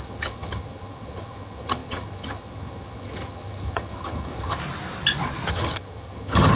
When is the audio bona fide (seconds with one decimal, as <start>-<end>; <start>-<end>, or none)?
4.6-5.5